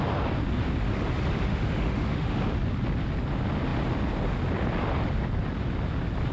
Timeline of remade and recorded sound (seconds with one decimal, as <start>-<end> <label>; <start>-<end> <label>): 0.0-1.5 recorded; 1.5-2.4 remade; 2.4-6.3 recorded